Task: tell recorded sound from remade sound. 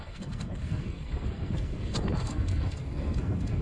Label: remade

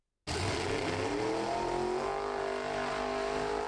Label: recorded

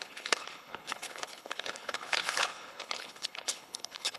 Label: remade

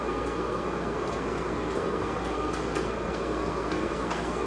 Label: remade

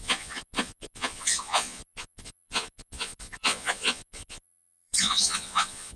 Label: remade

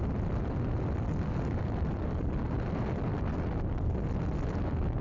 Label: recorded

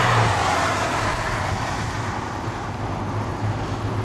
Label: recorded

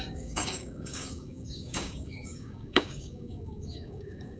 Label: remade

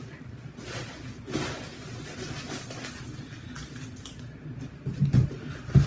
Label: recorded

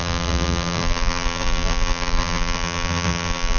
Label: remade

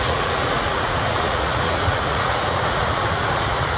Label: remade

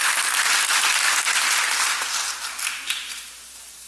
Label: recorded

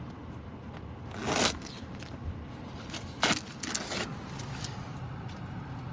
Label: recorded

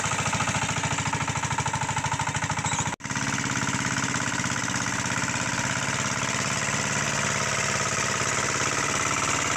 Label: recorded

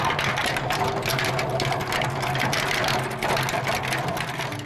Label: recorded